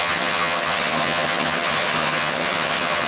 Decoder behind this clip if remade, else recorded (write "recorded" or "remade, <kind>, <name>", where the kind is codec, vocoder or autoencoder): remade, vocoder, HiFi-GAN